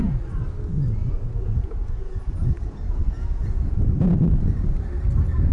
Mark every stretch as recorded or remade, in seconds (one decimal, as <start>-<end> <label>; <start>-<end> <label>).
0.0-1.0 recorded; 1.0-4.3 remade; 4.3-5.5 recorded